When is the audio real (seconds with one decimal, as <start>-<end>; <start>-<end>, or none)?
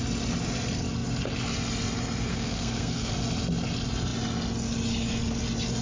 0.0-2.3; 3.1-5.8